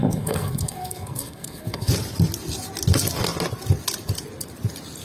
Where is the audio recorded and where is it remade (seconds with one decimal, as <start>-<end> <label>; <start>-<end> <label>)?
0.0-1.9 remade; 1.9-5.0 recorded